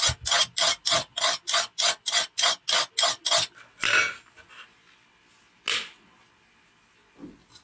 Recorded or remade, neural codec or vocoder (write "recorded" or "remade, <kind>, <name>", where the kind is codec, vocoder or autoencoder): recorded